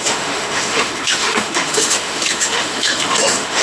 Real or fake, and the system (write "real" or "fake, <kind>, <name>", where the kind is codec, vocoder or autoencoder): fake, autoencoder, DAC-VAE